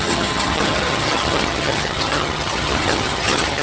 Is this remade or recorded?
remade